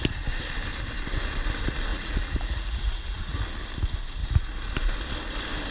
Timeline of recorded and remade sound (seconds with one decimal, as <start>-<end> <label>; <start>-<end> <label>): 0.0-1.9 recorded; 1.9-3.4 remade; 3.4-5.7 recorded

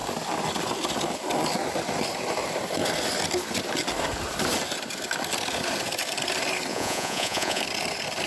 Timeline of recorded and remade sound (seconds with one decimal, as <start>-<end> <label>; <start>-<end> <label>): 0.0-6.7 recorded; 6.7-7.6 remade; 7.6-8.3 recorded

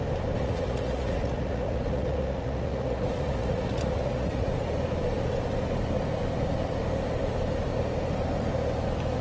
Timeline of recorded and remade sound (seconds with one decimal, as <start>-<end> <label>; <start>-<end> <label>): 0.0-0.4 recorded; 0.4-4.5 remade; 4.5-9.2 recorded

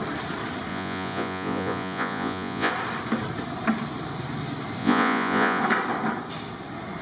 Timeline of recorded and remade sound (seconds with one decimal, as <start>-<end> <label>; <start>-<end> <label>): 0.0-0.7 recorded; 0.7-2.7 remade; 2.7-4.8 recorded; 4.8-5.6 remade; 5.6-7.0 recorded

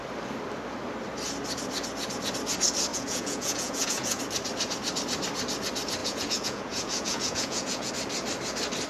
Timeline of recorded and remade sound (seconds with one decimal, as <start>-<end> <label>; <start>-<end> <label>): 0.0-2.9 recorded; 2.9-4.2 remade; 4.2-6.0 recorded; 6.0-7.9 remade; 7.9-8.9 recorded

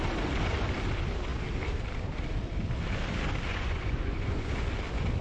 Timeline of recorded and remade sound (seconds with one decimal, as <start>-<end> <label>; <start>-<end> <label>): 0.0-3.5 recorded; 3.5-4.5 remade; 4.5-5.2 recorded

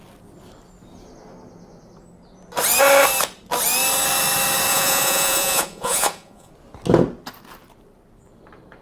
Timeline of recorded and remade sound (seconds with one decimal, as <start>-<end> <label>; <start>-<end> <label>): 0.0-4.7 recorded; 4.7-6.5 remade; 6.5-8.8 recorded

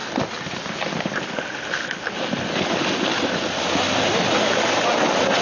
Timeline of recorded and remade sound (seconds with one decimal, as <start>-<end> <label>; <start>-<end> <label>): 0.0-5.4 recorded